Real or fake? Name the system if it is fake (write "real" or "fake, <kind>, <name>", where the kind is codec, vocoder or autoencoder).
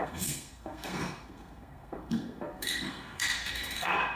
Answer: fake, codec, SNAC